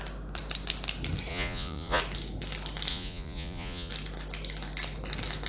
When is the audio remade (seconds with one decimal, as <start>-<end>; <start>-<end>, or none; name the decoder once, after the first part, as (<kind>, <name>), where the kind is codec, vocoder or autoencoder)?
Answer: 1.3-2.0 (vocoder, Vocos); 2.9-3.9